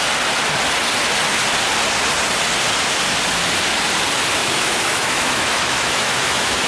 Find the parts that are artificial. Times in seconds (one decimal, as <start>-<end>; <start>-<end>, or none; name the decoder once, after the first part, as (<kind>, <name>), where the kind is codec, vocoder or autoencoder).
4.4-6.7 (autoencoder, DAC-VAE)